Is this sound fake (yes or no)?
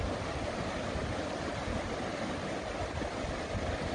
no